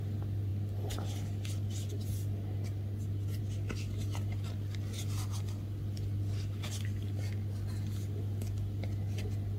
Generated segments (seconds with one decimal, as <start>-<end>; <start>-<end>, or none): none